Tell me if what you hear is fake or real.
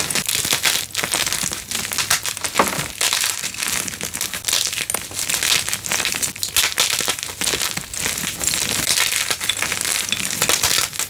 real